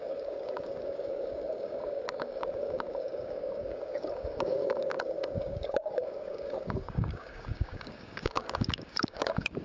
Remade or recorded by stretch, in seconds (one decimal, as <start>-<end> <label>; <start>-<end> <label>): 0.0-9.6 remade